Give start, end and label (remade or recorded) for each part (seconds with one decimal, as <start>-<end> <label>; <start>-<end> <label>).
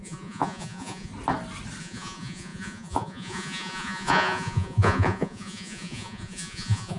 0.0-1.1 remade; 1.1-1.8 recorded; 1.8-7.0 remade